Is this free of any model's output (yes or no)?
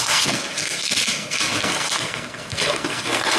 no